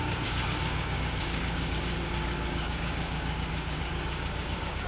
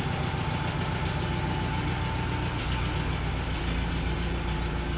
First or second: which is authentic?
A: second